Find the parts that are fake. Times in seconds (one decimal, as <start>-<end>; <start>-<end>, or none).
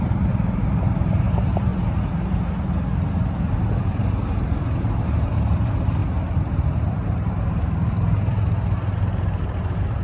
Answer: 0.0-1.7; 3.8-6.0; 6.5-10.0